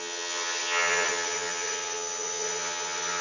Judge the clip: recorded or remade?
remade